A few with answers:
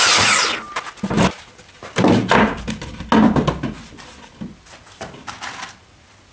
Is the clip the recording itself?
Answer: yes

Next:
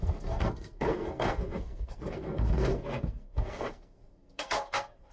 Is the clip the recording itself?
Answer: no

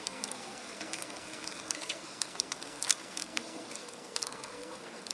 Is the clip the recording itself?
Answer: no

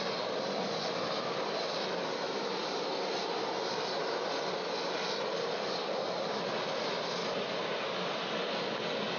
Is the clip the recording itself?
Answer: yes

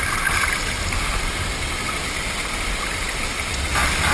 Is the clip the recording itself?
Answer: yes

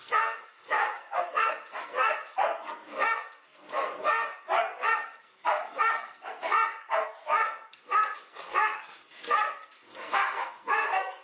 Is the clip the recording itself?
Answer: no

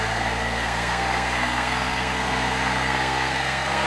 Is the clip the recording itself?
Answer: no